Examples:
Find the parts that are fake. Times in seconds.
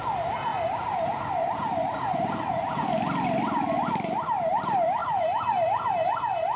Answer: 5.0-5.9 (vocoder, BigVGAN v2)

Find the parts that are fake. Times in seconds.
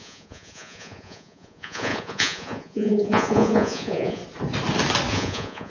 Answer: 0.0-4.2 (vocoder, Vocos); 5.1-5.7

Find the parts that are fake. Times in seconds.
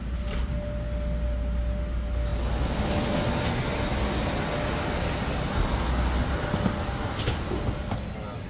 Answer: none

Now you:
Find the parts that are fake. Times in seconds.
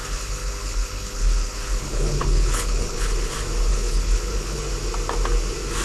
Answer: 0.0-3.3 (codec, HILCodec); 3.7-4.6